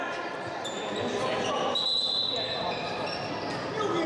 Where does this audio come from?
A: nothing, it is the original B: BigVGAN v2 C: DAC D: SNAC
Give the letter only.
A